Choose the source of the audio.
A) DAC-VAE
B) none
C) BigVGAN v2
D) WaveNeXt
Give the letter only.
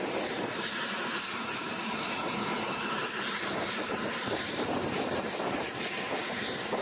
C